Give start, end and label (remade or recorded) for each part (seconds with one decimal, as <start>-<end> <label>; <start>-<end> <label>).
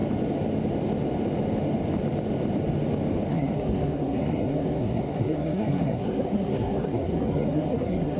0.0-3.3 recorded; 3.3-8.2 remade